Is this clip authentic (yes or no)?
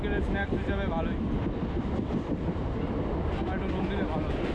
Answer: yes